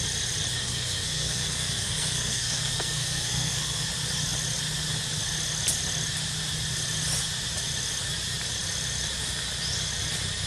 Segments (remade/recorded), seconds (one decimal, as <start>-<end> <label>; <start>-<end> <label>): 0.0-0.6 recorded; 0.6-3.9 remade; 3.9-10.5 recorded